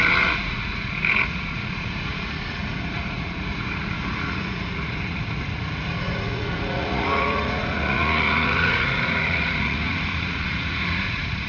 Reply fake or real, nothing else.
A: fake